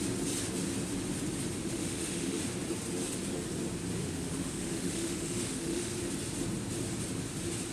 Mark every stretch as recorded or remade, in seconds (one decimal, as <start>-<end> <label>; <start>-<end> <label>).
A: 0.0-1.6 recorded; 1.6-2.4 remade; 2.4-4.0 recorded; 4.0-5.9 remade; 5.9-7.7 recorded